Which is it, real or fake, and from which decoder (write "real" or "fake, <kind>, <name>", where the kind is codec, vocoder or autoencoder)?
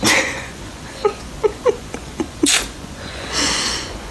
fake, vocoder, Vocos